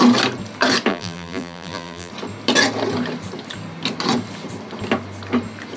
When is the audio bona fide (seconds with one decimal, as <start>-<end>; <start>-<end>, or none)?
0.0-0.9; 2.1-5.8